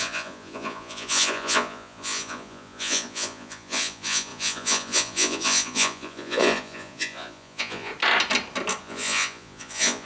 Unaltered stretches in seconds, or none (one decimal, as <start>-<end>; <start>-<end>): 7.9-8.8